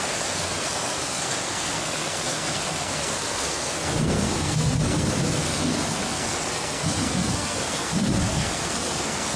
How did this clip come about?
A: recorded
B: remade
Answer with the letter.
B